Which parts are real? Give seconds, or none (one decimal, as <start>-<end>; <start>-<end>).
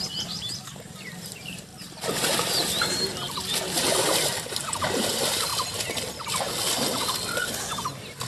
5.5-8.3